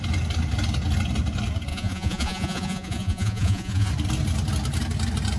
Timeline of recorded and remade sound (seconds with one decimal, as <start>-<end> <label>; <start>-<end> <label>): 0.0-1.7 recorded; 1.7-3.9 remade; 3.9-5.4 recorded